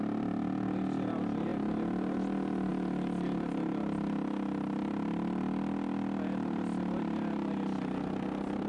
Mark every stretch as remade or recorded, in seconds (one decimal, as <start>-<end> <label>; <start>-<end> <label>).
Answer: 0.0-8.7 recorded